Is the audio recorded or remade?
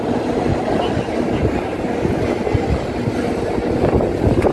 recorded